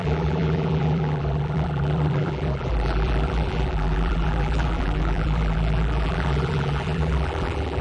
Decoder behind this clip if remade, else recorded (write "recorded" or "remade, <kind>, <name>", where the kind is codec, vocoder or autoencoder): remade, vocoder, BigVGAN v2